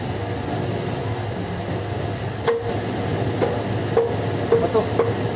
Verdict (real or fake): real